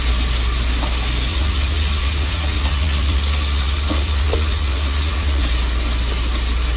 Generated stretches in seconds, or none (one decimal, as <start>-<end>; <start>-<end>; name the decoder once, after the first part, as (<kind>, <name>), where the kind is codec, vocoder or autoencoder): 1.3-5.4 (vocoder, Vocos)